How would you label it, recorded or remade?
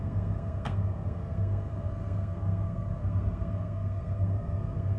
remade